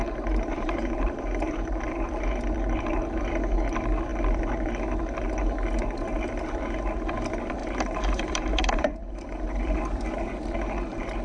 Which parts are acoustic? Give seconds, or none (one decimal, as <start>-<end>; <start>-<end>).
2.2-7.6; 9.8-11.2